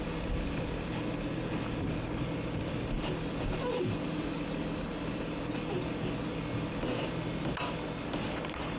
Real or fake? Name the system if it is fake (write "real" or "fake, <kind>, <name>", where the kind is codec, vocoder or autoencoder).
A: real